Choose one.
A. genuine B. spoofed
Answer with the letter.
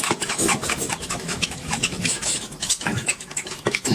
B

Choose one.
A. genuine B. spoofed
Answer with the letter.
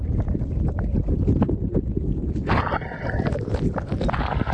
A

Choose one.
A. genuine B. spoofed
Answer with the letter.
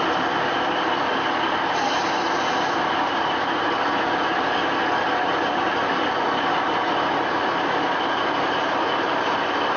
A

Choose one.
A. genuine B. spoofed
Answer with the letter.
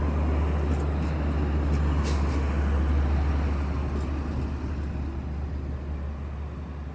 A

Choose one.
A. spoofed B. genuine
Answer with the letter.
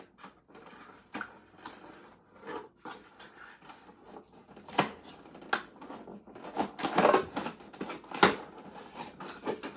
B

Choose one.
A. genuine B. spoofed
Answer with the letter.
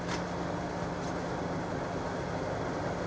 A